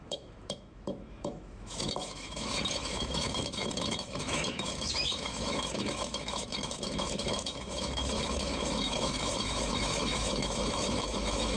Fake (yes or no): yes